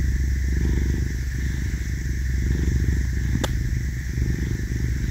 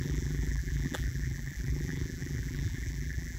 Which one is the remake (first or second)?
second